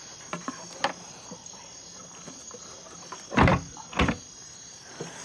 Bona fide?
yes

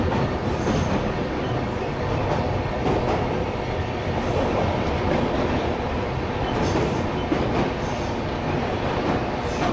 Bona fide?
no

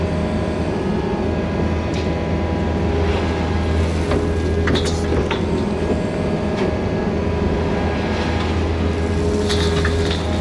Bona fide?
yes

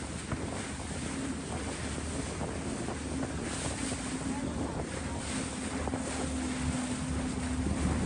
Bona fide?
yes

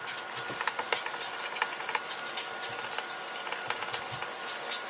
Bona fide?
yes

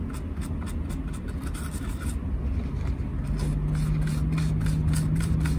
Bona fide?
yes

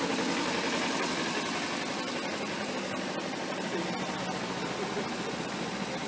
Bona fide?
yes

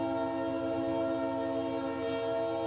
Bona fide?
yes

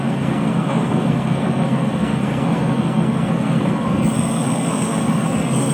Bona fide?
no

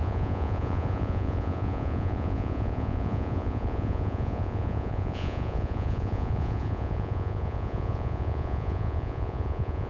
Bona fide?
no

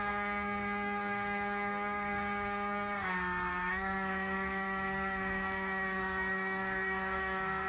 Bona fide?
no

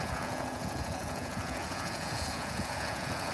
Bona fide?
no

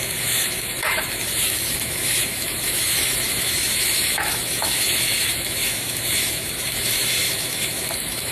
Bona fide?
no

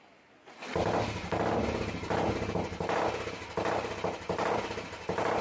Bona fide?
yes